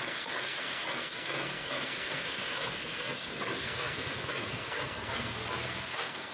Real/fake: fake